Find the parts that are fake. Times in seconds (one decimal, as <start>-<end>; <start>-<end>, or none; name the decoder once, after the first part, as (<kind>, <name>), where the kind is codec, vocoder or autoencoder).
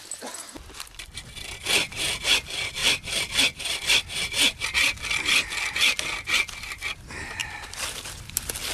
0.0-8.7 (vocoder, BigVGAN v2)